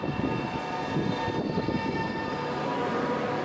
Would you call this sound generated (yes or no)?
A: no